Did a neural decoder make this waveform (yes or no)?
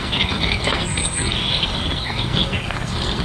yes